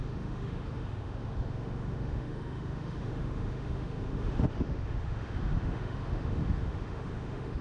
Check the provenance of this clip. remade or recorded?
remade